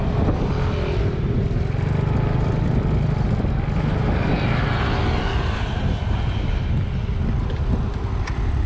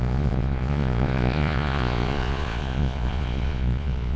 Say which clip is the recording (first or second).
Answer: first